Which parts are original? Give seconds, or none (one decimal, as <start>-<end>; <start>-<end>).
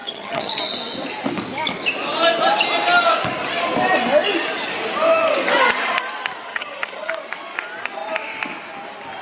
0.6-6.5; 7.1-9.2